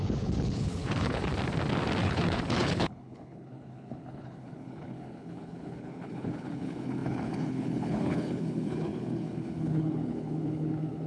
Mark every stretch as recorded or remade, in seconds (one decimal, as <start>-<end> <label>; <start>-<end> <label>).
0.0-1.3 remade; 1.3-2.0 recorded; 2.0-11.1 remade